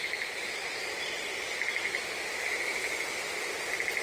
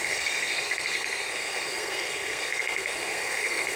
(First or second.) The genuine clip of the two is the first